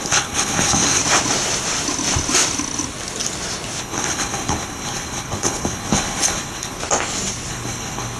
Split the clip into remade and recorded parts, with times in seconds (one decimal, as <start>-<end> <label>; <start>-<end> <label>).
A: 0.0-1.0 remade; 1.0-3.8 recorded; 3.8-6.8 remade; 6.8-7.5 recorded; 7.5-8.2 remade